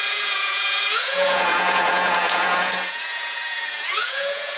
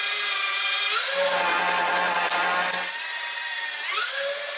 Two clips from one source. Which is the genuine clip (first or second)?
second